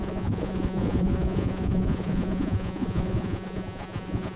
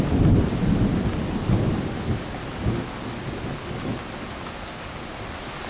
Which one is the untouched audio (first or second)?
second